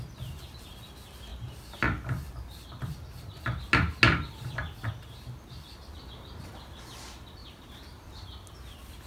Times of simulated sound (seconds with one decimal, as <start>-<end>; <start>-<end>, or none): 7.4-8.0